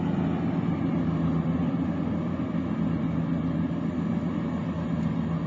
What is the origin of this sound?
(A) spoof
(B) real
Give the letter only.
B